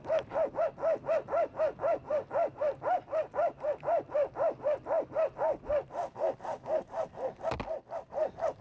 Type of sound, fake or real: real